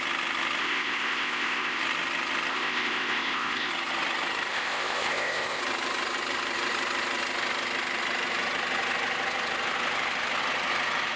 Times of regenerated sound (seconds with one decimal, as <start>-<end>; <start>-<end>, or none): 0.6-1.8; 2.5-3.7; 4.5-5.6